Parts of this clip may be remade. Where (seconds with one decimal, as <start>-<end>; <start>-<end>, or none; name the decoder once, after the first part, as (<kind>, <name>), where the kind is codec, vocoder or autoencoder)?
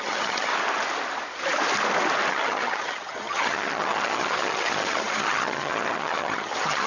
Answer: 0.0-0.5 (vocoder, HiFi-GAN); 2.3-6.9